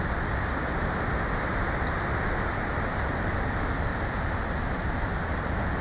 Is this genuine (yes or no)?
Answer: yes